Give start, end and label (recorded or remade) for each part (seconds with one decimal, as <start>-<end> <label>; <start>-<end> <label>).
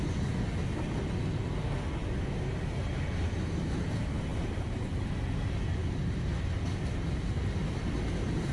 0.0-4.3 recorded; 4.3-5.0 remade; 5.0-8.5 recorded